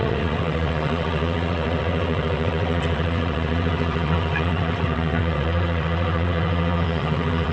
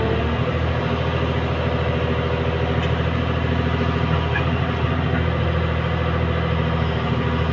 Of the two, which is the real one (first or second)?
second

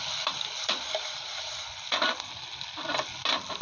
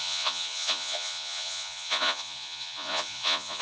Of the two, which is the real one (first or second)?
first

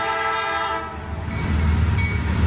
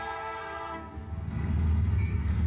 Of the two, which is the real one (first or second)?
first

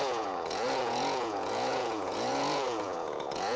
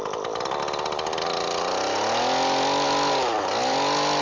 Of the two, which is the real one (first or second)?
second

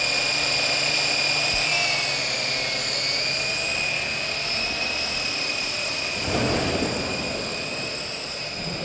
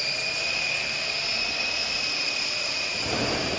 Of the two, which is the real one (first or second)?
first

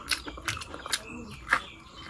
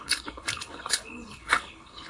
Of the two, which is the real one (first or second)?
first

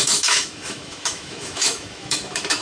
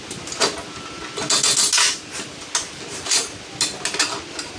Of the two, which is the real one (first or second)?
second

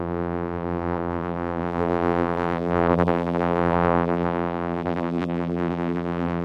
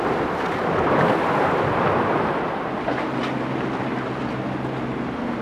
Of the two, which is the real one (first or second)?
second